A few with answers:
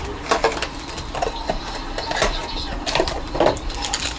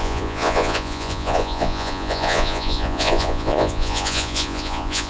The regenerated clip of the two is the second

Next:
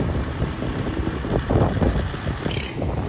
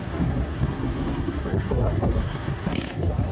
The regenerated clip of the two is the second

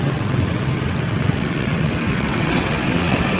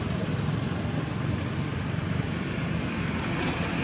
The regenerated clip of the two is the first